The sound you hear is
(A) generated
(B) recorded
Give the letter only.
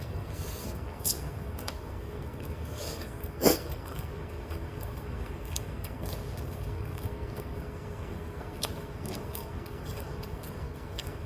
A